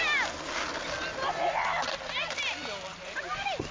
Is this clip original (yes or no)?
yes